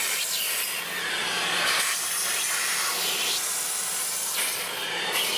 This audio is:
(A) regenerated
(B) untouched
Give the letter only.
B